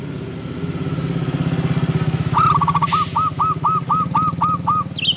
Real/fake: real